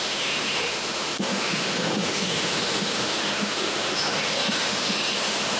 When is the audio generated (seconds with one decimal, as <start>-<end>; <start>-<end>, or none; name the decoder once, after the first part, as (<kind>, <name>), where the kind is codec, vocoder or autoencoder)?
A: 0.0-5.6 (autoencoder, DAC-VAE)